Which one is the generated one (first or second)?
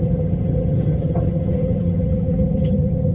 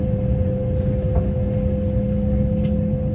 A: first